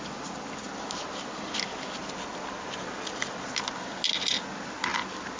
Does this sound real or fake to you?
real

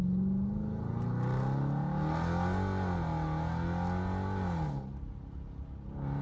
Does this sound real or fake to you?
real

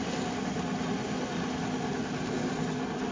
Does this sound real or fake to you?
real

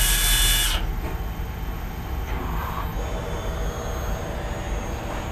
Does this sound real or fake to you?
real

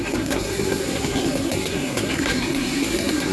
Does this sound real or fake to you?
fake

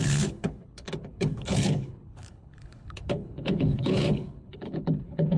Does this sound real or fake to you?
fake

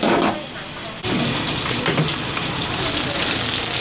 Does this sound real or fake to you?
real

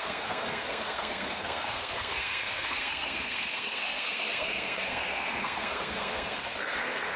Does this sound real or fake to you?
fake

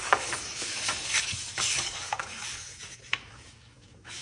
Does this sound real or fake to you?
fake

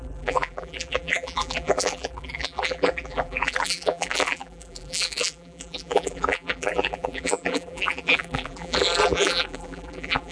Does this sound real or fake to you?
fake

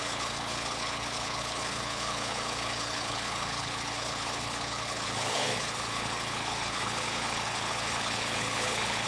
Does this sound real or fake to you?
fake